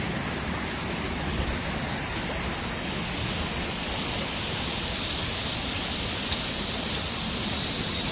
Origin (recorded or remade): recorded